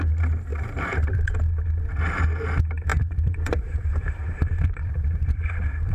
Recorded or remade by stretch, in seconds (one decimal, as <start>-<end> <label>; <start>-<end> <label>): 0.0-0.5 recorded; 0.5-1.4 remade; 1.4-2.9 recorded; 2.9-5.9 remade